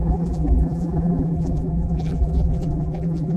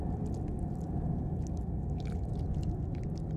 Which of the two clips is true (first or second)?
second